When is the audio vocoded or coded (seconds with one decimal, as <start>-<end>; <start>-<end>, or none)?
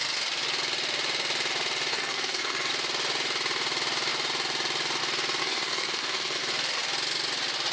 1.9-2.7; 5.4-6.4